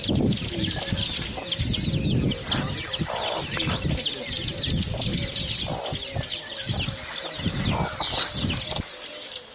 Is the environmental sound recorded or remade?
recorded